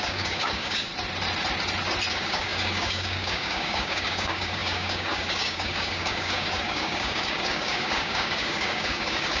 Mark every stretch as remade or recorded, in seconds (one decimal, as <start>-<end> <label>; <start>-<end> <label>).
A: 0.0-0.9 remade; 0.9-2.1 recorded; 2.1-9.4 remade